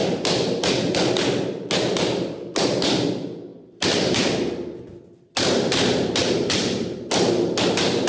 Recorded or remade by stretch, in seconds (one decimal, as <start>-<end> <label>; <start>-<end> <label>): 0.0-0.7 remade; 0.7-3.5 recorded; 3.5-4.9 remade; 4.9-6.2 recorded; 6.2-7.0 remade; 7.0-8.1 recorded